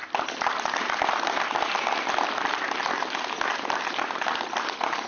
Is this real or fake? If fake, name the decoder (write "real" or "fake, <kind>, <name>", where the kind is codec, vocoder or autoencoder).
real